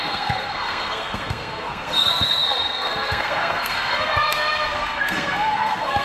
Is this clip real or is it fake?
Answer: fake